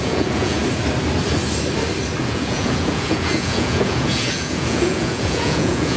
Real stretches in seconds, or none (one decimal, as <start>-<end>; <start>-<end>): 0.6-2.2